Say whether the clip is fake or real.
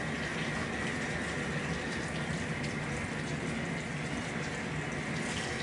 real